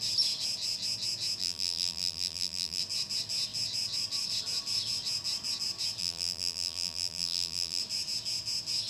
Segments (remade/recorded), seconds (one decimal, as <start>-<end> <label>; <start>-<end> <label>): 0.0-1.4 recorded; 1.4-2.8 remade; 2.8-6.0 recorded; 6.0-7.8 remade; 7.8-8.9 recorded